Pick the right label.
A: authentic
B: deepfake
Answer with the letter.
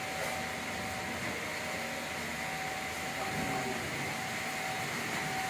A